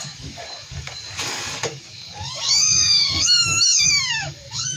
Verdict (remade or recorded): remade